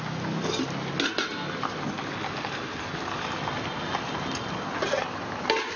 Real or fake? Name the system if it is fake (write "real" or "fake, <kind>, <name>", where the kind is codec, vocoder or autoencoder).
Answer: real